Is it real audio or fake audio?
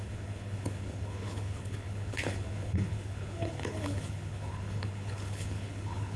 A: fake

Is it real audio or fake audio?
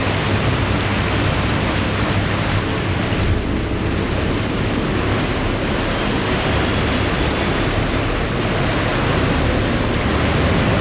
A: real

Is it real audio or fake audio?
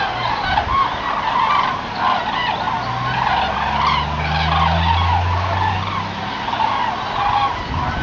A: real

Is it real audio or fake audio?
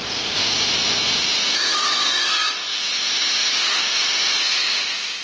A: real